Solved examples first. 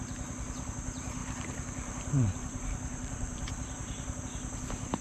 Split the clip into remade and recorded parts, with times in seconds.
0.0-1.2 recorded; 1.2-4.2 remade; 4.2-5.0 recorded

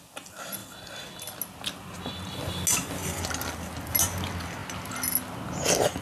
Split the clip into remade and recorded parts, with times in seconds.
0.0-6.0 recorded

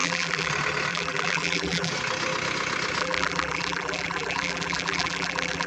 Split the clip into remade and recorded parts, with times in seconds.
0.0-0.5 remade; 0.5-0.9 recorded; 0.9-1.9 remade; 1.9-3.0 recorded; 3.0-5.7 remade

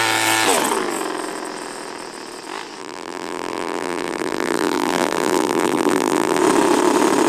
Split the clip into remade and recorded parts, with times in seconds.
0.0-2.8 recorded; 2.8-6.4 remade; 6.4-7.3 recorded